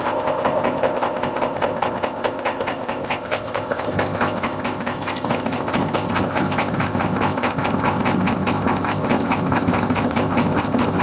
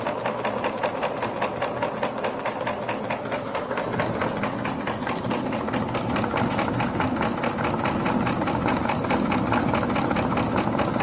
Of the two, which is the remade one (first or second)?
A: first